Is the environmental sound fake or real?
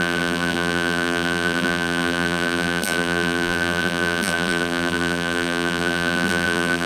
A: fake